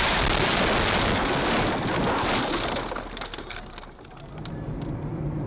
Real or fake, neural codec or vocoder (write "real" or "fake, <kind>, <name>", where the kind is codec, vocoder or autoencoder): real